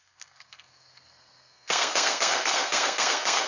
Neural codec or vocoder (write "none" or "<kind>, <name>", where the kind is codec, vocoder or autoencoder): codec, SNAC